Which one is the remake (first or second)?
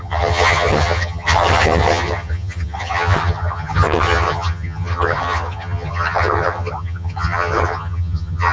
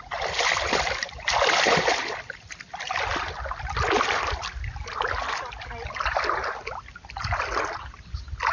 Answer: first